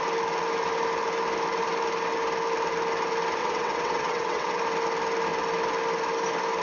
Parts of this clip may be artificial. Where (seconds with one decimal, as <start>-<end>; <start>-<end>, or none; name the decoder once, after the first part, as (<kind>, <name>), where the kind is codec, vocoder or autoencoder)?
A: 3.4-4.6 (vocoder, WaveNeXt)